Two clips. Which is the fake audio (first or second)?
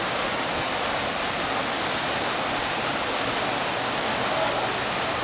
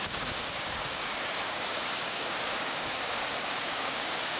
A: second